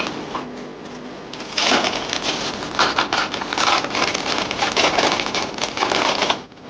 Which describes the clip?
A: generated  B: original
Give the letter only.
B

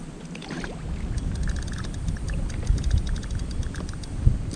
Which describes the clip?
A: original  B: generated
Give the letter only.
A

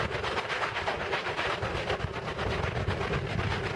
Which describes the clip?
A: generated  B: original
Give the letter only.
B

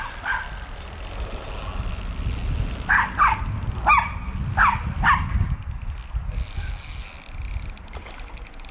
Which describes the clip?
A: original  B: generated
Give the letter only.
A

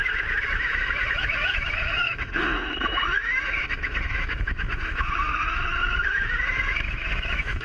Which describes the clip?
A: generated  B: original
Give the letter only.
A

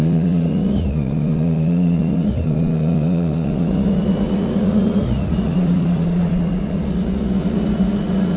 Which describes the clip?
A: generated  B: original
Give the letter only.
A